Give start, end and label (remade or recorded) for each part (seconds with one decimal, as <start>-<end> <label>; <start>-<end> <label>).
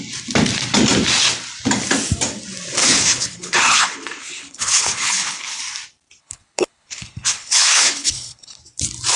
0.0-2.8 recorded; 2.8-5.6 remade; 5.6-6.2 recorded; 6.2-8.6 remade; 8.6-9.2 recorded